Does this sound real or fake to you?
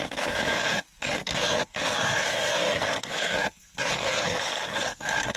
fake